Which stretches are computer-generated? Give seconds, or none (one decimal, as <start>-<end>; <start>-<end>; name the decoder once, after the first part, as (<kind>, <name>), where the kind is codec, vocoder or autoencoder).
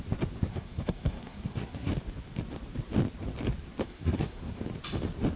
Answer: 0.5-1.9 (codec, SNAC); 3.8-4.6